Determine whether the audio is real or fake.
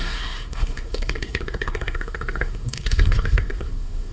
fake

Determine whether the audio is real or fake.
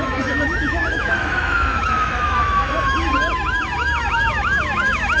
fake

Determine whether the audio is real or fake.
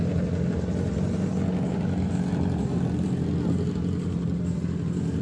real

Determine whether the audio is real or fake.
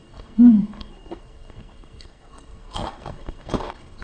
fake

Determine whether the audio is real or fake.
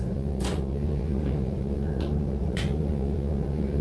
fake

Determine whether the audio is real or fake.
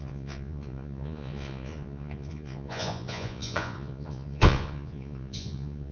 fake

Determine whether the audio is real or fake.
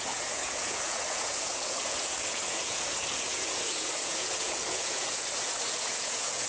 fake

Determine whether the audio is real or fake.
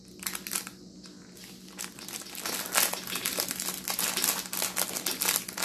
real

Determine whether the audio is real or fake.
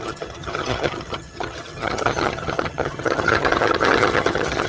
fake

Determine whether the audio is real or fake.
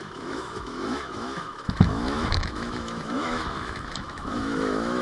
fake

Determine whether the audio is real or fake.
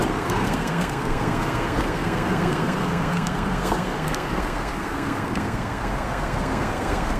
fake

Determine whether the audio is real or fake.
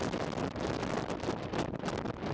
real